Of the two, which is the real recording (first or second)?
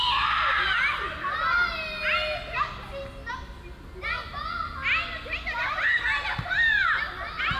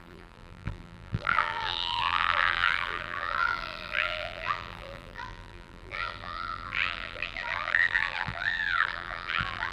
first